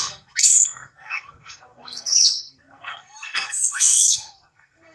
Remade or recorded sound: remade